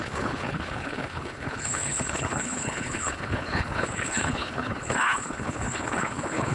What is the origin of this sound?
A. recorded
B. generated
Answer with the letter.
B